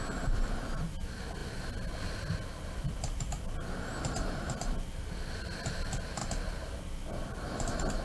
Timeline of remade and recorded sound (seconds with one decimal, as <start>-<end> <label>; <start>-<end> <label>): 0.0-8.0 recorded